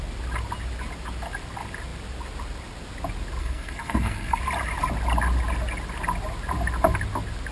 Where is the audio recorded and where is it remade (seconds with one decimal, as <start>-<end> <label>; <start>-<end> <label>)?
0.0-3.4 recorded; 3.4-4.4 remade; 4.4-7.5 recorded